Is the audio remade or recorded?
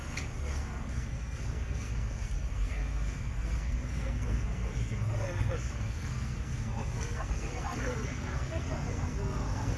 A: remade